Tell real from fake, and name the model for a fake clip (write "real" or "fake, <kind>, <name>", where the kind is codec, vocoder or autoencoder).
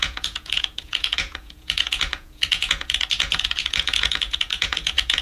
fake, vocoder, Vocos